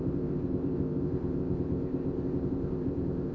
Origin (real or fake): fake